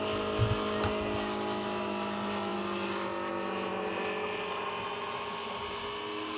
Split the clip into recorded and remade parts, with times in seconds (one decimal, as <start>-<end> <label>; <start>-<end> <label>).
0.0-6.4 recorded

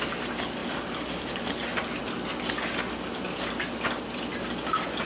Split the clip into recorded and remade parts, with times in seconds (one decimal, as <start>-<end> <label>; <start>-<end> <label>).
0.0-5.1 recorded